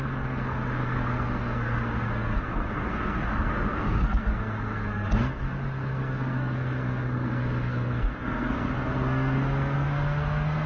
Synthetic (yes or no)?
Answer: yes